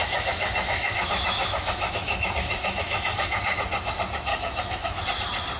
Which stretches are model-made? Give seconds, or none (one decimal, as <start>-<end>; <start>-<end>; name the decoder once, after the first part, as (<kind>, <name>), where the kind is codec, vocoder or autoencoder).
0.0-3.4 (autoencoder, DAC-VAE); 4.3-5.0

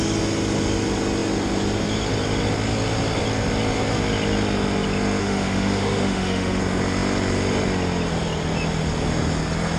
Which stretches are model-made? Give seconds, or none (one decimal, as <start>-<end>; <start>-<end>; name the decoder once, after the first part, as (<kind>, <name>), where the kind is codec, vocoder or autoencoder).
5.2-6.6 (autoencoder, DAC-VAE)

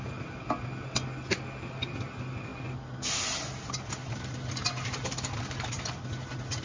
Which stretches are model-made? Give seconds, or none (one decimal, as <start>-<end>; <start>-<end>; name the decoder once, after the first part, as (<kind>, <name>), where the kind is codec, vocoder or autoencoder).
none

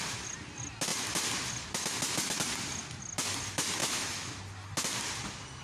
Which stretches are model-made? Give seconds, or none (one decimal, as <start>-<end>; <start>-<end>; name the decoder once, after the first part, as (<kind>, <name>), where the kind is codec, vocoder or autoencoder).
3.8-4.4 (autoencoder, DAC-VAE)

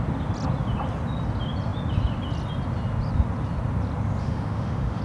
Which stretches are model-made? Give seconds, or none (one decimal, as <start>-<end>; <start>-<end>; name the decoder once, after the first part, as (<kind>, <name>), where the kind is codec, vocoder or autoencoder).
4.2-5.0 (autoencoder, DAC-VAE)

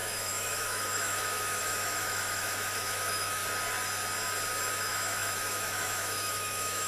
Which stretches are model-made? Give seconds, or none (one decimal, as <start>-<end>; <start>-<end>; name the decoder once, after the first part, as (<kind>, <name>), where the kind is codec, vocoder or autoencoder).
0.0-3.4 (autoencoder, DAC-VAE); 4.7-6.9

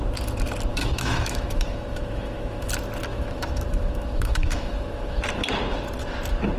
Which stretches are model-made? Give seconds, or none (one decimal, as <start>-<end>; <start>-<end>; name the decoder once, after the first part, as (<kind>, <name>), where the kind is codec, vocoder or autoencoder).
0.7-2.7 (autoencoder, DAC-VAE); 3.1-5.2

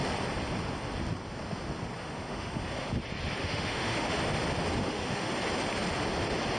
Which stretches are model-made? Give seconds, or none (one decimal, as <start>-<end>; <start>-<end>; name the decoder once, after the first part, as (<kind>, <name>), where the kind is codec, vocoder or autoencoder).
2.0-2.9 (autoencoder, DAC-VAE); 3.4-4.2; 4.8-5.3